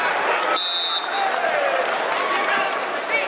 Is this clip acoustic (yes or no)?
yes